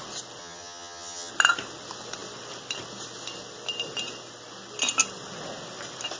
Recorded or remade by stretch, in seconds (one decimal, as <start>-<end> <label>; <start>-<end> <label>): 0.0-0.4 recorded; 0.4-1.3 remade; 1.3-6.2 recorded